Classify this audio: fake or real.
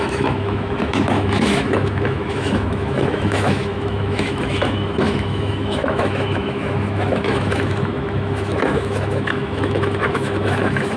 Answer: fake